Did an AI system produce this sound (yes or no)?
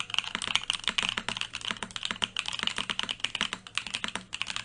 no